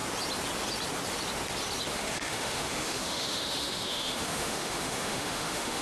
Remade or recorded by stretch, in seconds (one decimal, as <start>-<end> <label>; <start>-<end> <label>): 0.0-1.9 recorded; 1.9-5.8 remade